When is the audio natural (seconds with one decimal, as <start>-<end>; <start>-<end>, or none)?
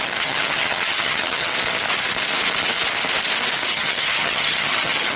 1.5-3.7